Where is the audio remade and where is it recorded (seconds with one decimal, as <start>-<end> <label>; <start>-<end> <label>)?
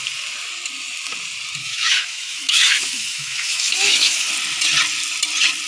0.0-1.6 recorded; 1.6-4.3 remade; 4.3-5.7 recorded